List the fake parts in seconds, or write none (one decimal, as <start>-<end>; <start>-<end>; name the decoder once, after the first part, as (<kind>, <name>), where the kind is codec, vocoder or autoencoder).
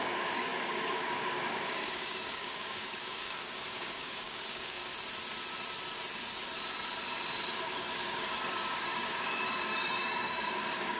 0.0-4.8 (codec, DAC); 7.5-11.0